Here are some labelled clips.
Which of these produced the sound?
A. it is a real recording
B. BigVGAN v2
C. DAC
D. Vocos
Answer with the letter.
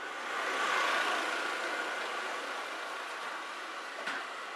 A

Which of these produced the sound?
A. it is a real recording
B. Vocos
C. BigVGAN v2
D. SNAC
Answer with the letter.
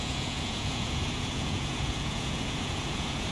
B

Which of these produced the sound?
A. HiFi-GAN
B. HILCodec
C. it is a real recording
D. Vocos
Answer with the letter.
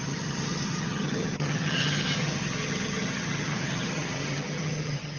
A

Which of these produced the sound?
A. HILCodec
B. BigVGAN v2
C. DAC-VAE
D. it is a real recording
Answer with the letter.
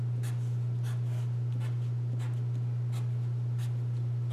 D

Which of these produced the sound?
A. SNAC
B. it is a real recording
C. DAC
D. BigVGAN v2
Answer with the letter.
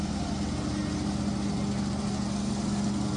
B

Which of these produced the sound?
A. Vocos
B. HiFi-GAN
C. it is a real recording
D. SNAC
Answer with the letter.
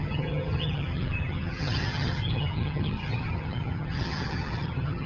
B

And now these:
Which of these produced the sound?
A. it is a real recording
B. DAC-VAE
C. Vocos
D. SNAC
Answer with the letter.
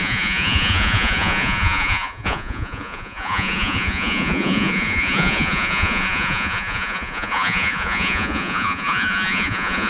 C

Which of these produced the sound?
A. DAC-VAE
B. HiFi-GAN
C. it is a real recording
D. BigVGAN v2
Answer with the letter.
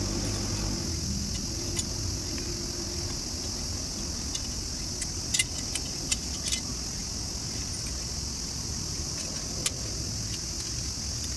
C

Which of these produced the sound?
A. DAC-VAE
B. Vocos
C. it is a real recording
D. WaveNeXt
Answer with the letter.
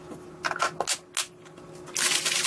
C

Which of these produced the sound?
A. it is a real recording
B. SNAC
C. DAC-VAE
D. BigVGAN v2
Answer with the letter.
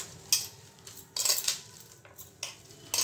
A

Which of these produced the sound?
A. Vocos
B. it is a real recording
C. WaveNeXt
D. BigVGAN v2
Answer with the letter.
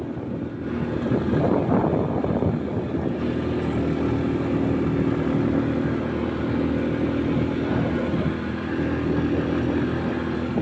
B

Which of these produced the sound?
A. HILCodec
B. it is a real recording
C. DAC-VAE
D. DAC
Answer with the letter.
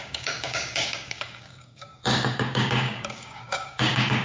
D